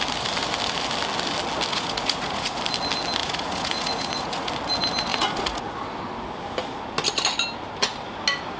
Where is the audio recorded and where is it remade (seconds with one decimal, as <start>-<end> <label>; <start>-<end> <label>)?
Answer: 0.0-1.7 recorded; 1.7-2.6 remade; 2.6-3.2 recorded; 3.2-4.5 remade; 4.5-5.1 recorded; 5.1-5.8 remade; 5.8-8.6 recorded